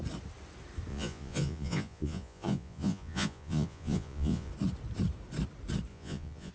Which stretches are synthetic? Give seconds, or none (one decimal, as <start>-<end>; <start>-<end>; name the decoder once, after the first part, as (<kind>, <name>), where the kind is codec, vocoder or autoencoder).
0.9-4.5 (vocoder, Vocos); 5.9-6.5